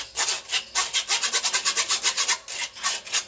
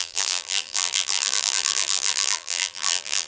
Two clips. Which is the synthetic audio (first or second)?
second